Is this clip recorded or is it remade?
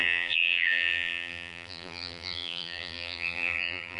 remade